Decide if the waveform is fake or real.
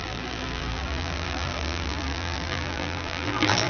fake